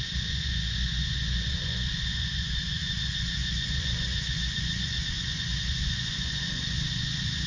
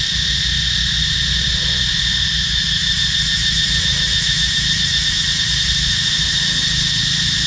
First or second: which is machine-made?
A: first